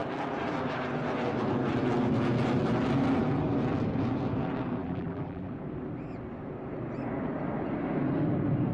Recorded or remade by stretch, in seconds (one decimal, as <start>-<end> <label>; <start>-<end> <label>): 0.0-4.8 recorded; 4.8-5.5 remade; 5.5-8.7 recorded